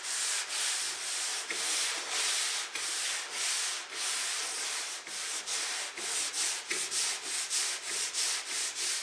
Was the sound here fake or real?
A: real